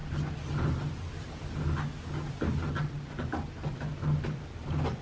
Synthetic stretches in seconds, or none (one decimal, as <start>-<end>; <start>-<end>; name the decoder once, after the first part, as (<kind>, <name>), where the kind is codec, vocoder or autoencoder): none